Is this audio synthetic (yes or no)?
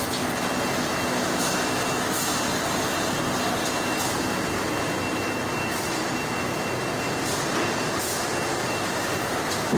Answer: no